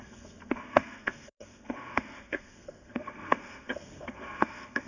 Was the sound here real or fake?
fake